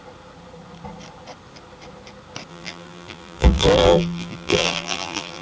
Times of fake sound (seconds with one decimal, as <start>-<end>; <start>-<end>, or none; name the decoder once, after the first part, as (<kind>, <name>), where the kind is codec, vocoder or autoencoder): 2.5-5.4 (vocoder, BigVGAN v2)